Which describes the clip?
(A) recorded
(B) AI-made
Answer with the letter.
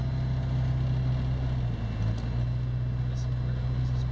A